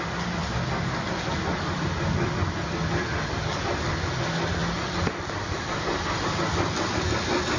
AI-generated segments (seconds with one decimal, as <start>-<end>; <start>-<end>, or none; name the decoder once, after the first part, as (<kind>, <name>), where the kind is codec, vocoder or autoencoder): none